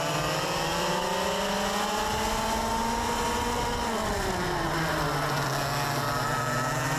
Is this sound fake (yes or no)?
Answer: no